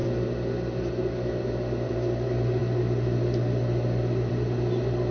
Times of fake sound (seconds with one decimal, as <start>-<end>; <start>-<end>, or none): none